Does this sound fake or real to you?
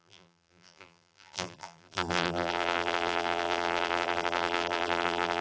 fake